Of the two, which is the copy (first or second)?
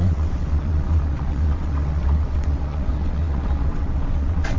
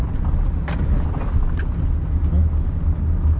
first